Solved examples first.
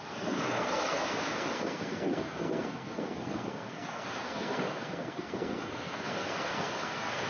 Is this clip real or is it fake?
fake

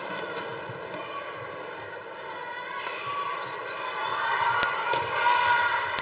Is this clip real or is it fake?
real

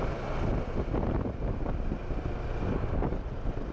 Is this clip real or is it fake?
real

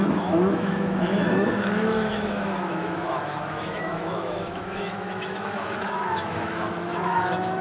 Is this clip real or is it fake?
fake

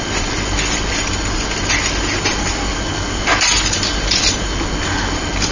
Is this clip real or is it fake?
real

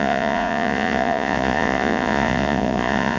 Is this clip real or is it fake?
fake